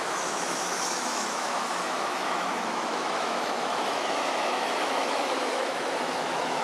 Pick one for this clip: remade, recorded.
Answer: remade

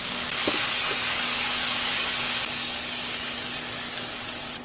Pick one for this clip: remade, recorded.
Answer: remade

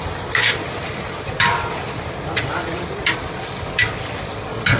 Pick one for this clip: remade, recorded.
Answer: recorded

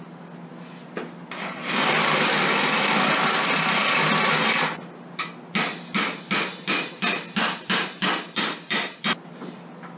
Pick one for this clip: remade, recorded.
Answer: recorded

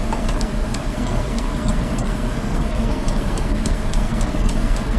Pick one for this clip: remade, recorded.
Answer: remade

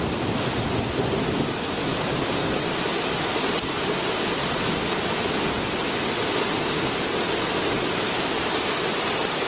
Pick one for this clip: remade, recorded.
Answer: recorded